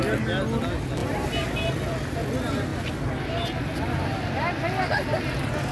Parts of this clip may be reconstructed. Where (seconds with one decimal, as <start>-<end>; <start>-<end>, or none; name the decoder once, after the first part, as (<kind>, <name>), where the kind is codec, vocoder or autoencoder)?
1.0-1.7 (vocoder, BigVGAN v2)